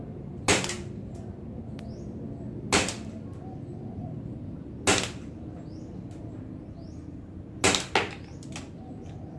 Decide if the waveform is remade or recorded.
recorded